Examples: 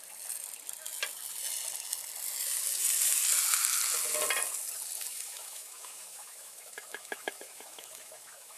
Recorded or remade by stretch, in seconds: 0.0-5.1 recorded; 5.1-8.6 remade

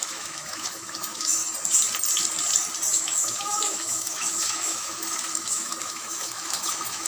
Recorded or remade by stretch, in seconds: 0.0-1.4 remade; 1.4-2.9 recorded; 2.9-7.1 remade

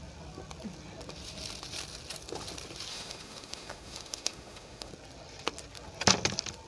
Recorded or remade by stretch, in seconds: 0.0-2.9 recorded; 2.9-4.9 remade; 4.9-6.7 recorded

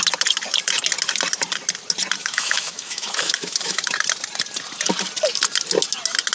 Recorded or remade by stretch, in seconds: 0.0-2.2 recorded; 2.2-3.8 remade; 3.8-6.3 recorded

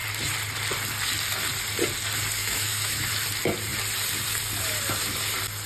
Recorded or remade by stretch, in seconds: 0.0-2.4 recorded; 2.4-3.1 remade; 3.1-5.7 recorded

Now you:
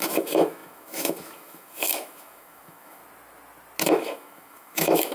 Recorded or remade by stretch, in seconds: 0.0-3.0 remade; 3.0-3.9 recorded; 3.9-5.1 remade